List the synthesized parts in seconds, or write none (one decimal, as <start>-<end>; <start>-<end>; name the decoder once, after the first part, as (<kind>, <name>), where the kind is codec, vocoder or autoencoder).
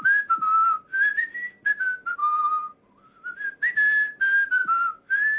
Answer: none